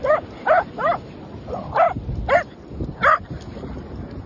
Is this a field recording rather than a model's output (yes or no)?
yes